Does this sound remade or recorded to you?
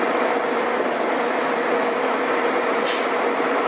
recorded